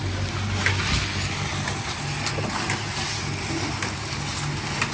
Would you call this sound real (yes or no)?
yes